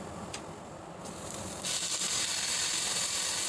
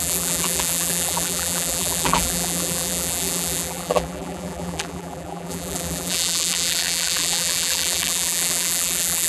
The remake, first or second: second